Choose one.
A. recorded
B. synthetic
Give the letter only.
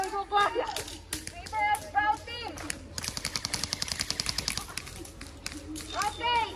A